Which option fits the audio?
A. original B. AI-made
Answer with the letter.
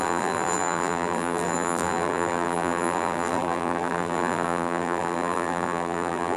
B